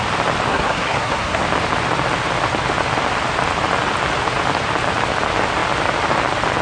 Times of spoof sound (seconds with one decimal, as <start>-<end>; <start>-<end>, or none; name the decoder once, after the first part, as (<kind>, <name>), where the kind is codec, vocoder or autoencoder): 0.5-1.4 (codec, SNAC)